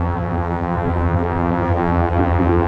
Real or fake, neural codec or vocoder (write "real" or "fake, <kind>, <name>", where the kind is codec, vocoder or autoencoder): fake, vocoder, BigVGAN v2